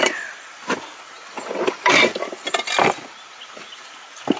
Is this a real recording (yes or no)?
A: yes